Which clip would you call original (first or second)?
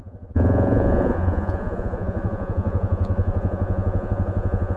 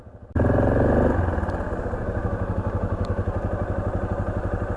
second